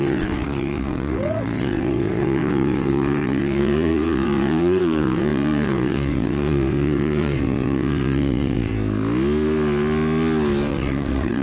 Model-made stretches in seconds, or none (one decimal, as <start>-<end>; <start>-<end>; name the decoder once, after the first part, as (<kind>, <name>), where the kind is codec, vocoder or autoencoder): 0.0-8.7 (vocoder, WaveNeXt); 10.7-11.4